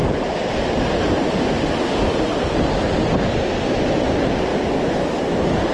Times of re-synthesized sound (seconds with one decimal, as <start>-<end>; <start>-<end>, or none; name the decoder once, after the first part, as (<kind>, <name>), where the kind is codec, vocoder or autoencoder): none